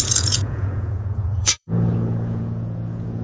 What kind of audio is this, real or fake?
fake